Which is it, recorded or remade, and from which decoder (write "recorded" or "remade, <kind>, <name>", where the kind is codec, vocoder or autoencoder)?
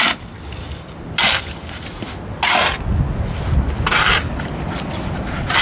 recorded